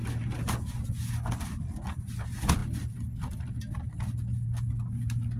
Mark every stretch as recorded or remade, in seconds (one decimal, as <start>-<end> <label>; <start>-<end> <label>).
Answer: 0.0-5.4 recorded